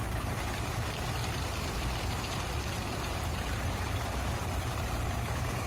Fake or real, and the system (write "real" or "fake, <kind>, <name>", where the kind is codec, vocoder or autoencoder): fake, vocoder, BigVGAN v2